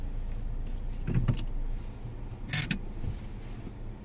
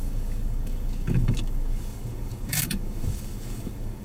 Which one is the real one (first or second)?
first